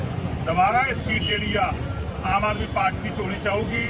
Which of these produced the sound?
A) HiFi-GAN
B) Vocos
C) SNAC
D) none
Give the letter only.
B